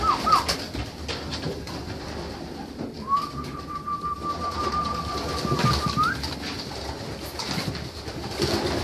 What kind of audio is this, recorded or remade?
recorded